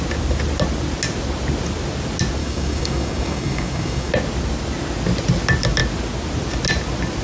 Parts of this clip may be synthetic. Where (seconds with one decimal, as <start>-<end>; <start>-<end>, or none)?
2.4-4.1